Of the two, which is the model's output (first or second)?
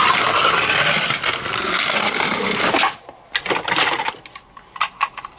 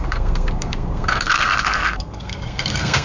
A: second